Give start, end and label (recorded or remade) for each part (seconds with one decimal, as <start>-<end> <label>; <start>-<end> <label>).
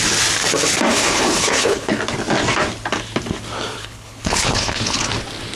0.0-0.9 recorded; 0.9-2.0 remade; 2.0-3.7 recorded; 3.7-5.1 remade; 5.1-5.6 recorded